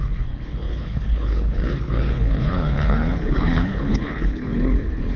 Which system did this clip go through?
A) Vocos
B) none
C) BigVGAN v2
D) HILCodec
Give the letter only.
D